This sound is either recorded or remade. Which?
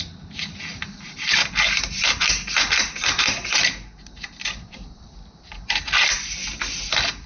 recorded